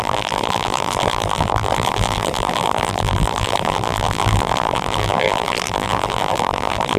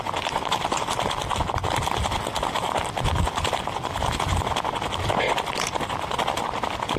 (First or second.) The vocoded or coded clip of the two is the first